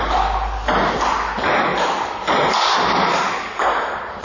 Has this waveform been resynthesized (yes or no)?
no